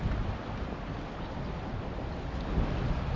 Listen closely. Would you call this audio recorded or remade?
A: recorded